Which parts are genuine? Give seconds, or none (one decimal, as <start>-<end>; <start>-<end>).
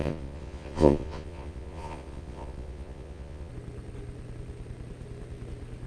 3.5-5.9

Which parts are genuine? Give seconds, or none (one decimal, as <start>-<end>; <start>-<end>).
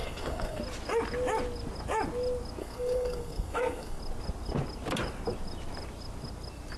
0.6-2.6; 4.0-6.8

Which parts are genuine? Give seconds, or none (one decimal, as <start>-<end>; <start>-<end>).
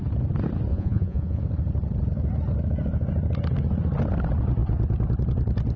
0.0-0.7; 1.4-5.8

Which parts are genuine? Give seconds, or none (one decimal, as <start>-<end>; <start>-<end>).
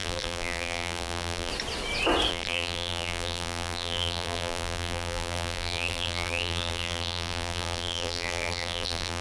1.5-2.3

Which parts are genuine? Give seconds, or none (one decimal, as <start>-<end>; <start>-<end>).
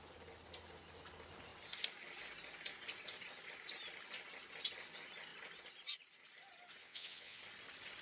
0.0-6.8; 7.4-8.0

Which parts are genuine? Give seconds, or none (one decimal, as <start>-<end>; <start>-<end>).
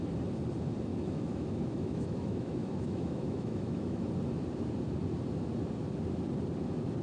0.0-0.9; 4.1-7.0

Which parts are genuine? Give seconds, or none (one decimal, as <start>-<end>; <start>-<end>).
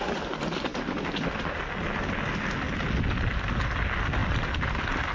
0.0-5.1